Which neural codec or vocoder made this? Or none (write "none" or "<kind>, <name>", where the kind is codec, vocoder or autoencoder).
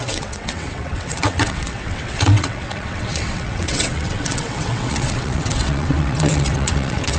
vocoder, WaveNeXt